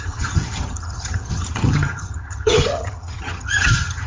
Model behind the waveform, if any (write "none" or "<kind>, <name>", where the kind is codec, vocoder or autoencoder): vocoder, HiFi-GAN